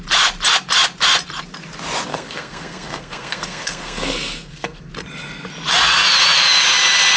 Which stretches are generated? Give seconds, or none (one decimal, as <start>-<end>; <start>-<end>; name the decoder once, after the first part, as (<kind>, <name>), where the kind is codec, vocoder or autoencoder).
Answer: 2.1-4.9 (codec, SNAC)